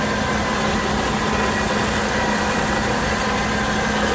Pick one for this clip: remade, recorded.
recorded